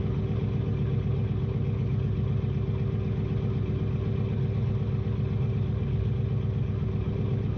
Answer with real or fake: real